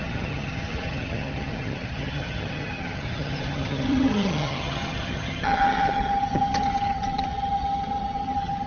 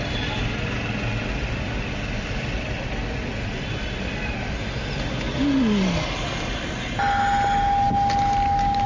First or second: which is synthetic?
first